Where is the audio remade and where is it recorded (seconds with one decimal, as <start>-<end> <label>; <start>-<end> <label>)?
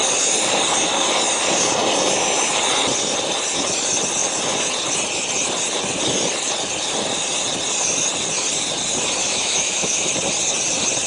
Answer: 0.0-9.2 recorded; 9.2-10.1 remade; 10.1-11.1 recorded